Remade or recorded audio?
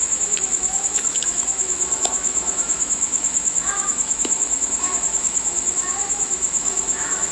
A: remade